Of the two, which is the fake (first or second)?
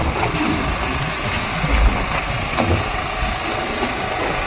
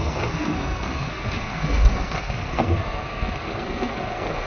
second